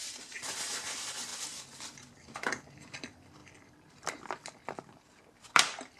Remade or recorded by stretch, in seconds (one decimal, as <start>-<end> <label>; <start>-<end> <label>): 0.0-1.3 remade; 1.3-2.1 recorded; 2.1-6.0 remade